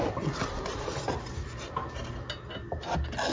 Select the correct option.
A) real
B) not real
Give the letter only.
A